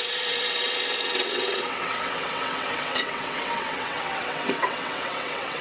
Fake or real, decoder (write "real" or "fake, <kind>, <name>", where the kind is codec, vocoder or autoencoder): fake, vocoder, WaveNeXt